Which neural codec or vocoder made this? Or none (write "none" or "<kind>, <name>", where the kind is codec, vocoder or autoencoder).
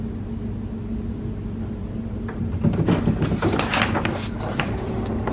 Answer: none